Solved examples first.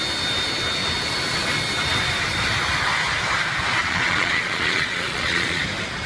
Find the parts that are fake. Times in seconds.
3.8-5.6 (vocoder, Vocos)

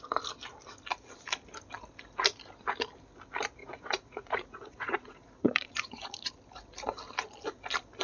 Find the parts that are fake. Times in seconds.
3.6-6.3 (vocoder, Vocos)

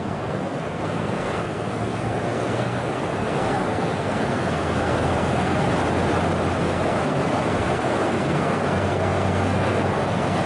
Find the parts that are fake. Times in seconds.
0.0-5.7 (codec, SNAC); 6.6-10.5

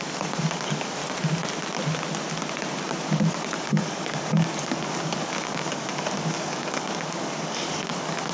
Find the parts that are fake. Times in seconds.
0.0-1.0 (codec, DAC); 3.3-8.3

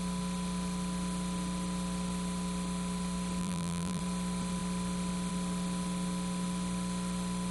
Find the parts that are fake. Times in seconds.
3.4-4.0 (vocoder, BigVGAN v2)

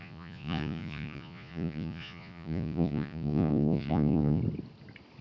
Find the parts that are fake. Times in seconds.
0.0-4.4 (vocoder, Vocos)

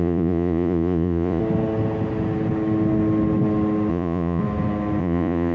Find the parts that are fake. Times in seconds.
0.0-1.4 (vocoder, Vocos); 3.9-4.4; 5.0-5.5